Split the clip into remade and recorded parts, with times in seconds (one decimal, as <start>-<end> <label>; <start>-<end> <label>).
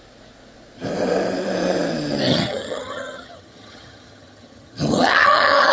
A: 0.0-2.3 recorded; 2.3-5.7 remade